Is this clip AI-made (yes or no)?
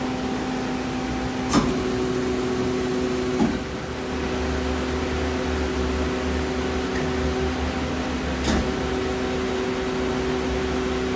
no